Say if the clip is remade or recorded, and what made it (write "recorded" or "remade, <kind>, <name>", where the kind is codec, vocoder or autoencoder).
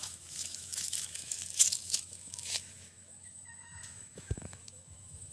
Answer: remade, autoencoder, DAC-VAE